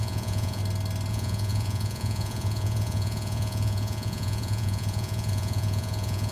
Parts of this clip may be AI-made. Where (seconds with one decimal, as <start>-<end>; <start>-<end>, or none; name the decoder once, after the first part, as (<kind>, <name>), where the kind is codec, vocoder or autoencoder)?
0.0-0.6 (vocoder, Vocos); 1.1-6.3